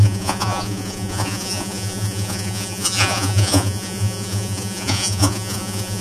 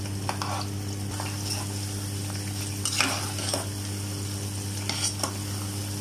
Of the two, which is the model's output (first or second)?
first